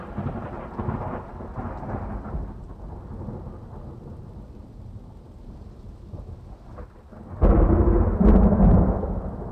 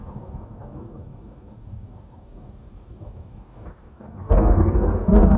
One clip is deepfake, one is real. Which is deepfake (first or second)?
second